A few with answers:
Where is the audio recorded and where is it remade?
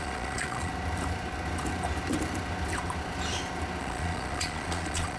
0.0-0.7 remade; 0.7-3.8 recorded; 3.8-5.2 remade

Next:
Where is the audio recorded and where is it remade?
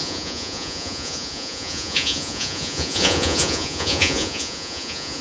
0.0-5.2 remade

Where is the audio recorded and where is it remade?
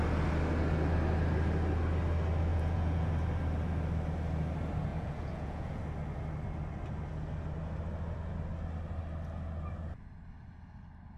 0.0-2.5 recorded; 2.5-3.1 remade; 3.1-4.9 recorded; 4.9-5.8 remade; 5.8-11.2 recorded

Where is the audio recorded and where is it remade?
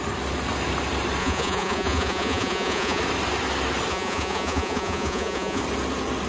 0.0-1.2 recorded; 1.2-3.0 remade; 3.0-3.9 recorded; 3.9-5.6 remade; 5.6-6.3 recorded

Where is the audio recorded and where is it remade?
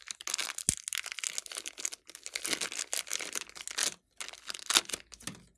0.0-5.6 recorded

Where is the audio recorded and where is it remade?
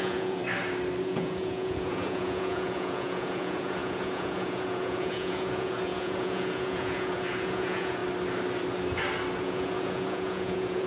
0.0-0.4 remade; 0.4-1.0 recorded; 1.0-8.0 remade; 8.0-9.4 recorded; 9.4-10.9 remade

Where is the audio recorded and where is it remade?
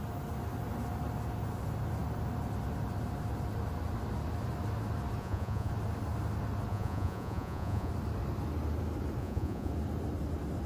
0.0-5.2 recorded; 5.2-5.7 remade; 5.7-6.7 recorded; 6.7-7.9 remade; 7.9-9.2 recorded; 9.2-9.7 remade; 9.7-10.7 recorded